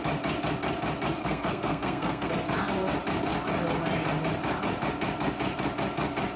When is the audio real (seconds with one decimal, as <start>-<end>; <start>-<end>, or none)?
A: 0.0-1.2; 2.3-6.4